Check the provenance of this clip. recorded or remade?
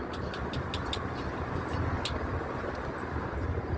recorded